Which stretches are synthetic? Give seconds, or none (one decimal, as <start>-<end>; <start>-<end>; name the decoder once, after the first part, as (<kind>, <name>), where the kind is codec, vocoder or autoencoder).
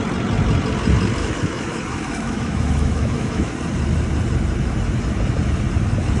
1.2-3.5 (autoencoder, DAC-VAE)